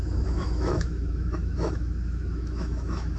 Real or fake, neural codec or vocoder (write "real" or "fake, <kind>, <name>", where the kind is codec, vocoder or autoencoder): fake, autoencoder, DAC-VAE